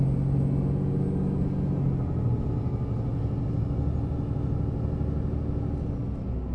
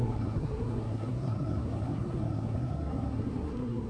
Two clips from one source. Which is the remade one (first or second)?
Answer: second